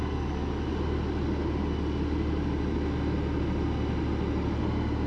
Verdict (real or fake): real